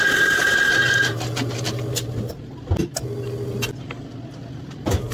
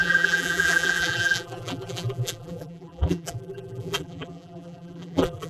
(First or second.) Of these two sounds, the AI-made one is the second